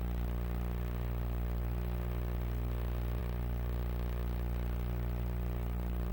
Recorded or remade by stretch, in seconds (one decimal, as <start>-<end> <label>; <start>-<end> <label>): 0.0-6.1 recorded